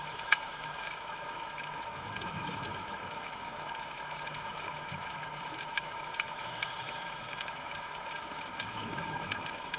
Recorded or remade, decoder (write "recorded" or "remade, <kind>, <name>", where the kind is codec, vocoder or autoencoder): remade, autoencoder, DAC-VAE